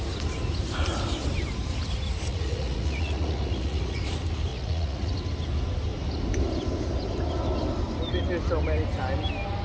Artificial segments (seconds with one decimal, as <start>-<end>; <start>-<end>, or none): 2.3-4.0; 4.5-5.1